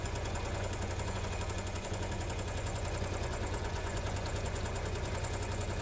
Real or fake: fake